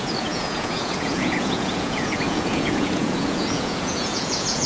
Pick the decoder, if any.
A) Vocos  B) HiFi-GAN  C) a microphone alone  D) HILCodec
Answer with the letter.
A